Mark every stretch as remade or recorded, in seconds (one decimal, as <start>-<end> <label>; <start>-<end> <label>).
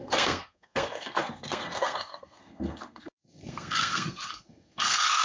0.0-5.2 remade